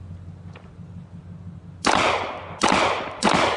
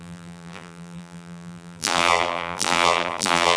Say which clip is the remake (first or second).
second